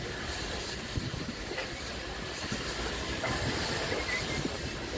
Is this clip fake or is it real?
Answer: real